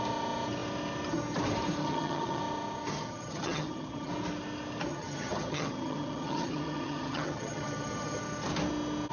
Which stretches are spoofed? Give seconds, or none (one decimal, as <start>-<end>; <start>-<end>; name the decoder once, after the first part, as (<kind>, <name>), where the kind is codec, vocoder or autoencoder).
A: 1.8-2.4 (vocoder, HiFi-GAN); 2.9-4.1; 4.9-8.2